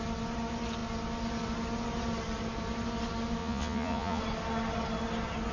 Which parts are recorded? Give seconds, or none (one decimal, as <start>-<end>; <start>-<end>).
0.0-3.4; 4.2-5.5